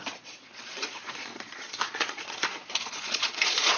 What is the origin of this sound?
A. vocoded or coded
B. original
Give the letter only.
A